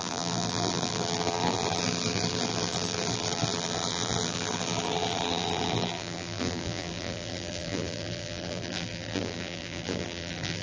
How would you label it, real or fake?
fake